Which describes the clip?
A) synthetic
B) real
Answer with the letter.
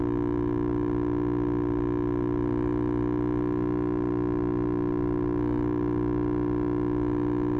B